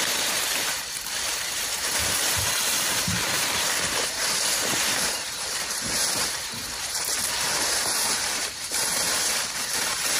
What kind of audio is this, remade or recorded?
remade